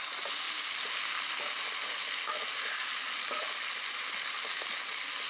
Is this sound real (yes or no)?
yes